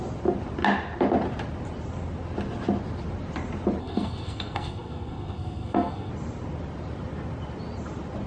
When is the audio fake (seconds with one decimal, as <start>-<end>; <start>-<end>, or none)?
3.8-6.1